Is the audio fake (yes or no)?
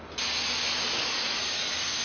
no